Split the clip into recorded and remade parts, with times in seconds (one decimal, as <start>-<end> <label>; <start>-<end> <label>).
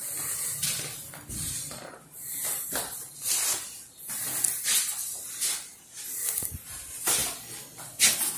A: 0.0-1.5 recorded; 1.5-7.2 remade; 7.2-8.4 recorded